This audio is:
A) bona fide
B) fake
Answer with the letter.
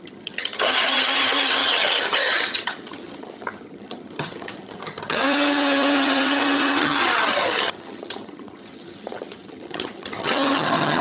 B